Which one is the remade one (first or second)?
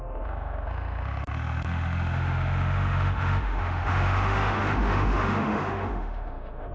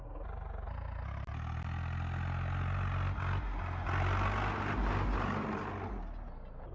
first